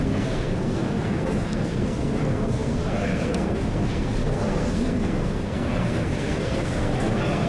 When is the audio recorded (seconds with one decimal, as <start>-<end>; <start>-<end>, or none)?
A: none